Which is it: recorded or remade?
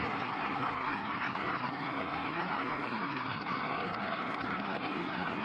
remade